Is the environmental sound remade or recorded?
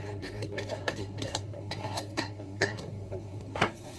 remade